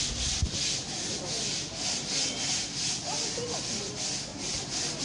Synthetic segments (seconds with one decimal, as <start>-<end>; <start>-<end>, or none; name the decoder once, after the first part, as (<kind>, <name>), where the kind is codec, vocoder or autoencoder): none